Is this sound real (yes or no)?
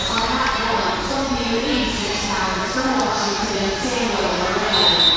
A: no